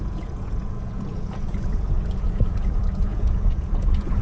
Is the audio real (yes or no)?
no